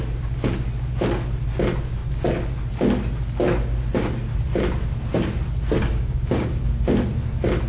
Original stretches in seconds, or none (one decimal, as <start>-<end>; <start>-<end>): 0.0-5.8; 6.6-7.7